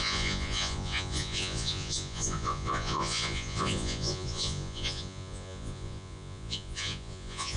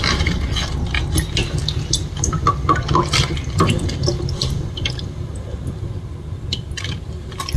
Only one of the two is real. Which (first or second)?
second